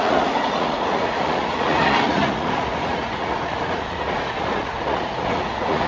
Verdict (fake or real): fake